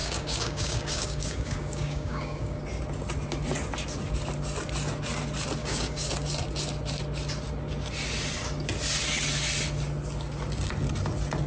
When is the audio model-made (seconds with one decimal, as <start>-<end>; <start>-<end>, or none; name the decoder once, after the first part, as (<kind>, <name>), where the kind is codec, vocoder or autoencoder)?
0.0-2.6 (codec, DAC); 5.6-6.1